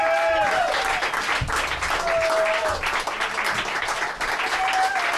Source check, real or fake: real